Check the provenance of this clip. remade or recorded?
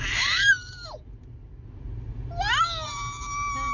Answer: recorded